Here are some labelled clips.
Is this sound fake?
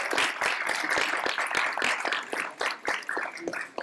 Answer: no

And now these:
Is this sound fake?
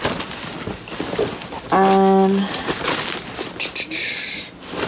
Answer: no